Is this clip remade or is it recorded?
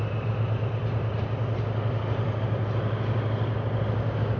recorded